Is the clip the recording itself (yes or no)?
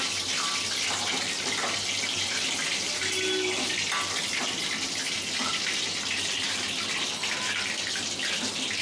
yes